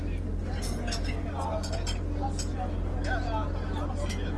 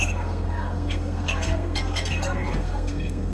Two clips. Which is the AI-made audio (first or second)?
second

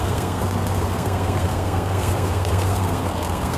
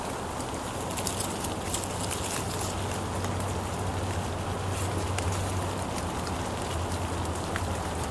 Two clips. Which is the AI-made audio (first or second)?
first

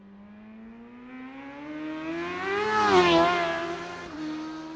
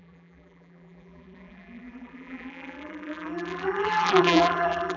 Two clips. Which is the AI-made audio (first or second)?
second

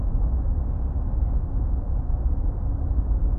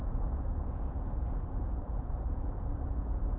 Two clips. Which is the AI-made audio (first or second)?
second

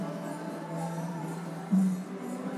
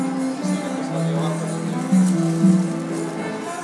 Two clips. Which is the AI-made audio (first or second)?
first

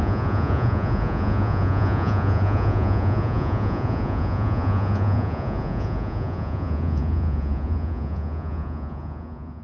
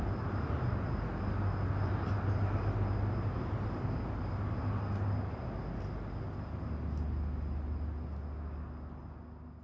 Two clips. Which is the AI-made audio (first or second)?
first